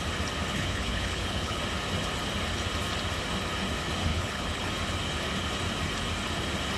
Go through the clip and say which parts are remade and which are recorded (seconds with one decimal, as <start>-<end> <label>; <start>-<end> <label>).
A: 0.0-0.5 recorded; 0.5-1.6 remade; 1.6-4.1 recorded; 4.1-4.7 remade; 4.7-6.8 recorded